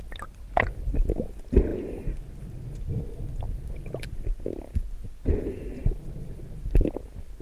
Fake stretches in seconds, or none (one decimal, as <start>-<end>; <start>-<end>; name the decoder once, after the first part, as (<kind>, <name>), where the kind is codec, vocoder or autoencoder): none